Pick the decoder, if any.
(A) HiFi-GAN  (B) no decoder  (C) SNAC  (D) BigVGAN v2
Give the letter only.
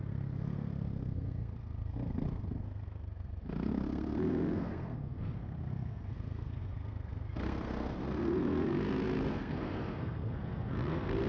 C